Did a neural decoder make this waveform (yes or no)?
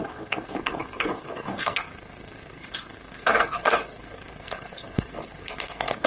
yes